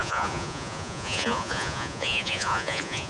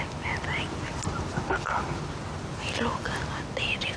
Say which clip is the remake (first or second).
first